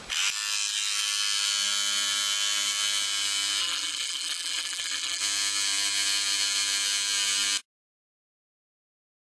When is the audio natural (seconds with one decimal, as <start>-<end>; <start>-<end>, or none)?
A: 0.0-3.6; 5.2-9.3